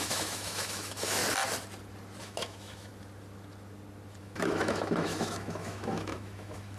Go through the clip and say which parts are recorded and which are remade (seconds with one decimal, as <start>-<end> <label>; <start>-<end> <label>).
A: 0.0-1.2 remade; 1.2-2.2 recorded; 2.2-2.9 remade; 2.9-4.2 recorded; 4.2-6.8 remade